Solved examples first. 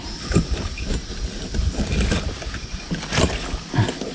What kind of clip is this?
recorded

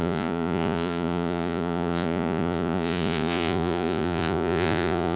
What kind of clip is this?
remade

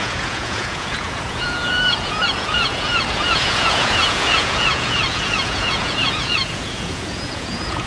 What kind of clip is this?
remade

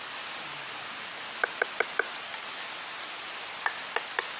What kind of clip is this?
recorded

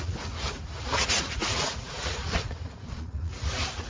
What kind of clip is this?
remade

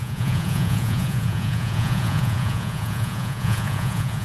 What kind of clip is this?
remade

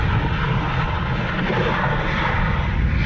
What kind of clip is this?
recorded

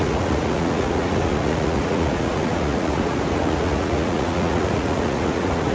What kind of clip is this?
remade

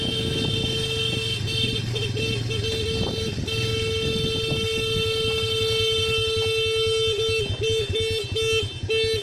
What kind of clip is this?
recorded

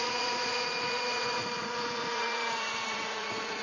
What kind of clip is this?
remade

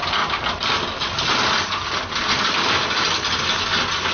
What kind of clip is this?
recorded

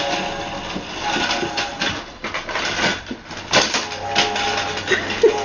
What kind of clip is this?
recorded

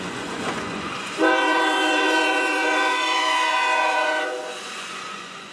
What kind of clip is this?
remade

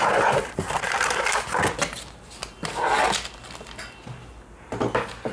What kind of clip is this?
recorded